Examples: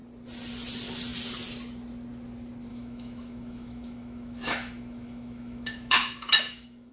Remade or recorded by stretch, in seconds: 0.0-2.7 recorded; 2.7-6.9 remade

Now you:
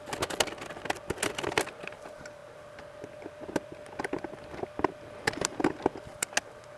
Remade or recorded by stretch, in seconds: 0.0-6.8 recorded

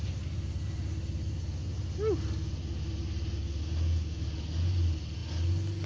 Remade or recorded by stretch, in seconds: 0.0-5.9 recorded